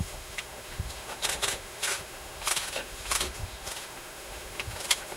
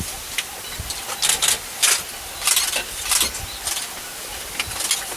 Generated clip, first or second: first